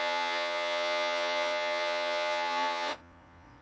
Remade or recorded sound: remade